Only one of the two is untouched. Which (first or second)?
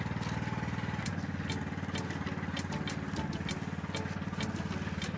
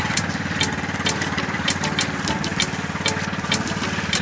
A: first